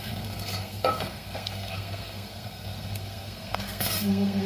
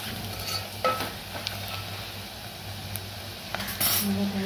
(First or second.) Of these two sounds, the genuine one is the second